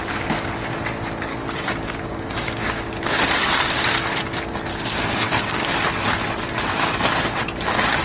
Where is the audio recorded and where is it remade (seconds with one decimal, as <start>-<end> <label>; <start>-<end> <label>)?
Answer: 0.0-1.3 recorded; 1.3-3.2 remade; 3.2-4.7 recorded; 4.7-5.8 remade; 5.8-8.0 recorded